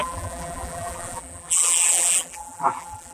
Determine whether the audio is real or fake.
fake